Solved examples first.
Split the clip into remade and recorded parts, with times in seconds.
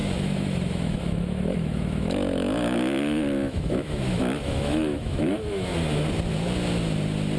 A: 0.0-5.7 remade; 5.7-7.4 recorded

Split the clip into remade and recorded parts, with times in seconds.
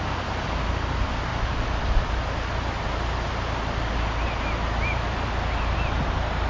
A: 0.0-6.5 recorded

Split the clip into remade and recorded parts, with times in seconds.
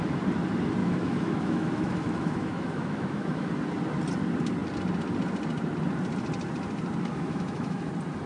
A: 0.0-0.8 recorded; 0.8-3.5 remade; 3.5-7.1 recorded; 7.1-7.9 remade; 7.9-8.3 recorded